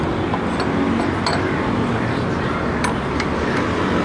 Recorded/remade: recorded